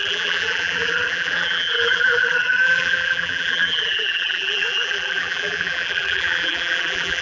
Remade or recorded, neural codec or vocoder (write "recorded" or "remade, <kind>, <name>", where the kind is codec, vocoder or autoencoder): remade, vocoder, BigVGAN v2